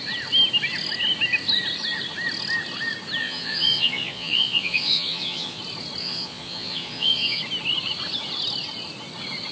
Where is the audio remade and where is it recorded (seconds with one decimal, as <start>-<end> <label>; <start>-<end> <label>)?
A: 0.0-3.2 recorded; 3.2-5.6 remade; 5.6-6.0 recorded; 6.0-7.4 remade; 7.4-9.5 recorded

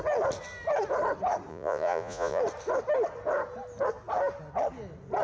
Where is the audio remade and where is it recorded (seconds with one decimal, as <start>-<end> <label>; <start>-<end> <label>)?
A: 0.0-1.5 recorded; 1.5-2.4 remade; 2.4-5.2 recorded

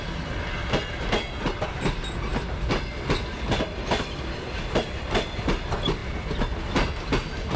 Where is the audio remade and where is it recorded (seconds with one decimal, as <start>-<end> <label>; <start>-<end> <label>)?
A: 0.0-7.6 recorded

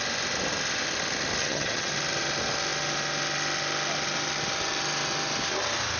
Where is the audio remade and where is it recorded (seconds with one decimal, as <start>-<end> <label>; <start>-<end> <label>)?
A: 0.0-1.4 recorded; 1.4-1.9 remade; 1.9-6.0 recorded

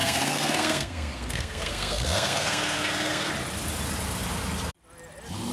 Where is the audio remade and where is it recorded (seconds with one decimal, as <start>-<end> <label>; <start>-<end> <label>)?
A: 0.0-3.3 remade; 3.3-5.5 recorded

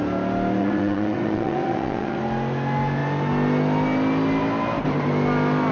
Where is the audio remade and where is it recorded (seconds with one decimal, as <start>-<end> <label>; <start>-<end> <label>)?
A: 0.0-0.6 recorded; 0.6-2.2 remade; 2.2-5.7 recorded

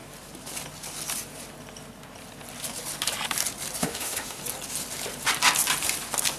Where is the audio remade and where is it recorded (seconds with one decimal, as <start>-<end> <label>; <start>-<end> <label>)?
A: 0.0-3.8 recorded; 3.8-4.4 remade; 4.4-6.4 recorded